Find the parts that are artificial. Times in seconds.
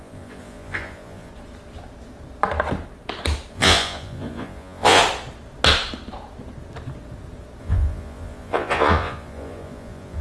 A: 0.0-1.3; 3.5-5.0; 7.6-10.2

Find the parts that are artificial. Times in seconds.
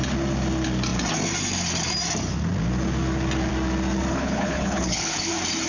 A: 4.1-5.3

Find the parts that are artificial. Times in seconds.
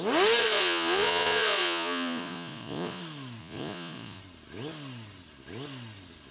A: 0.4-3.0; 3.4-4.2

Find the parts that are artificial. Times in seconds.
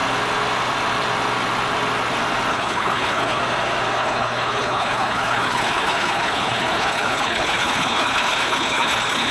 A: 2.5-3.4; 4.0-9.3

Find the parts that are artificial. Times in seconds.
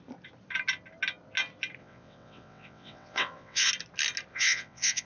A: 1.8-3.7; 4.3-5.1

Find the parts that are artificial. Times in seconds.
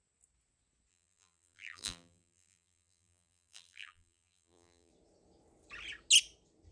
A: 0.9-4.9